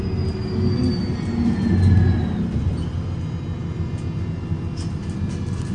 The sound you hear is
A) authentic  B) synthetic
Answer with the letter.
A